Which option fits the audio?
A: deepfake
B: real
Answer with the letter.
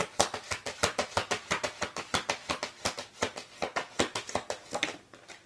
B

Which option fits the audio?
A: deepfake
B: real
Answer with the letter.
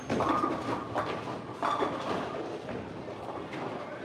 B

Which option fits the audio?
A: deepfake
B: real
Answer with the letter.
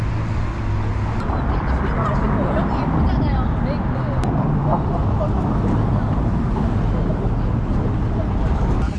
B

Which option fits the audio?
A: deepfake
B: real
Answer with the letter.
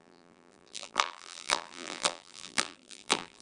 A